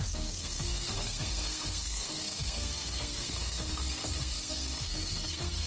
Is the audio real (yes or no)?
no